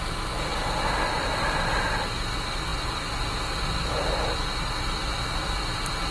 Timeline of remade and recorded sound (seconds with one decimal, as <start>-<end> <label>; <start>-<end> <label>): 0.0-6.1 recorded